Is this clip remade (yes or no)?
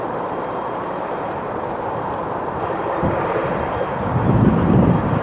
yes